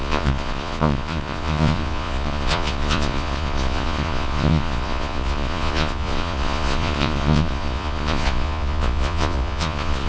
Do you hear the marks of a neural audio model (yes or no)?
yes